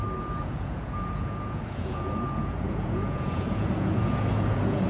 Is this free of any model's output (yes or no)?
no